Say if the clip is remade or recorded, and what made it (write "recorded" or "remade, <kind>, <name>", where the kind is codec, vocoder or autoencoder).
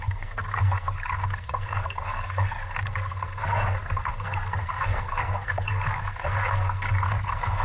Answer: remade, codec, SNAC